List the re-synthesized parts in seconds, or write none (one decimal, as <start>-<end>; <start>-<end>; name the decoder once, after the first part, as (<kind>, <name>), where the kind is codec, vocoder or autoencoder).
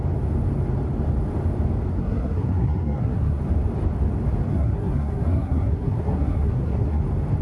1.9-3.4 (codec, SNAC); 4.5-7.0